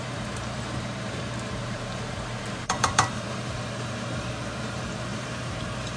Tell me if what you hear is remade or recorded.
remade